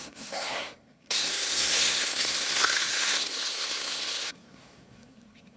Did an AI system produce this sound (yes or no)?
yes